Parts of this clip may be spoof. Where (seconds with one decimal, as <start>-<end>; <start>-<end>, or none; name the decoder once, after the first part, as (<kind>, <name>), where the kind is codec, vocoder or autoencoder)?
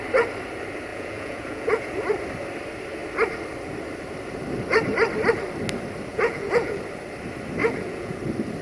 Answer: 0.9-1.9 (vocoder, Vocos); 6.1-6.8; 7.6-8.2